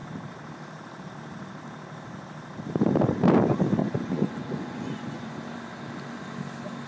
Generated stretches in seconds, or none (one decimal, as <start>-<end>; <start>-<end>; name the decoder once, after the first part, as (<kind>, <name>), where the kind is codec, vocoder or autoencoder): 3.8-5.4 (vocoder, Vocos)